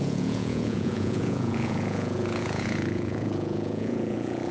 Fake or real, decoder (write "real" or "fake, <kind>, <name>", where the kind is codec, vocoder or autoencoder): fake, vocoder, Vocos